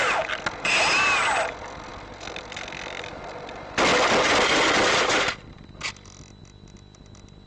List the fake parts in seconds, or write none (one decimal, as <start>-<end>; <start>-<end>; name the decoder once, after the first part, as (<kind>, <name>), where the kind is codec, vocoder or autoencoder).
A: none

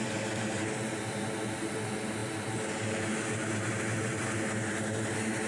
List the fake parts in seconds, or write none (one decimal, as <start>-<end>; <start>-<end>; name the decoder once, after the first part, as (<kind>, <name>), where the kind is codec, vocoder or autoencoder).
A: none

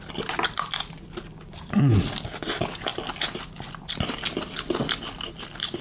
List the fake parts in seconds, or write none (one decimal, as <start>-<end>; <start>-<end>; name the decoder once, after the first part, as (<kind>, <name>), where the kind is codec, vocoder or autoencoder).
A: none